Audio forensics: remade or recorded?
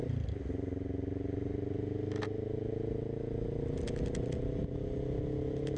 recorded